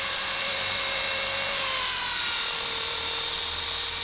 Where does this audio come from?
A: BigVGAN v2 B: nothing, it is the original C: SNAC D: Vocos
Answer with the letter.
A